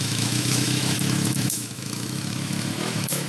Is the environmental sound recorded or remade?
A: remade